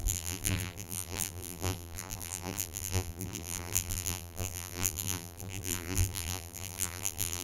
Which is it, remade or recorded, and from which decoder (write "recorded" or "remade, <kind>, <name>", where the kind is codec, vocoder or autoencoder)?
remade, vocoder, BigVGAN v2